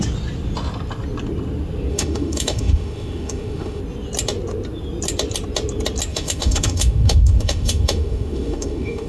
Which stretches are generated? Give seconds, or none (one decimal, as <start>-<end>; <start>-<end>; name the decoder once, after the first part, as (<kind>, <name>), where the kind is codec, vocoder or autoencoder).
1.9-3.8 (autoencoder, DAC-VAE); 6.1-9.1